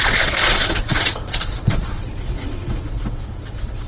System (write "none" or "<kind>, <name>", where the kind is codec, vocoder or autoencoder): vocoder, Vocos